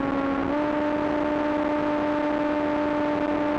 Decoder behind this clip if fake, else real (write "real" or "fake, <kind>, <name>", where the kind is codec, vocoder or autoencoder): real